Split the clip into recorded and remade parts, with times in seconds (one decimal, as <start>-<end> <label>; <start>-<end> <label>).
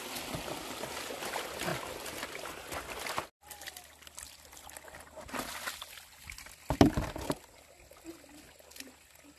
0.0-9.4 recorded